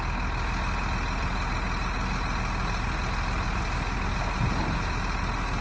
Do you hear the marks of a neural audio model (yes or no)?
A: no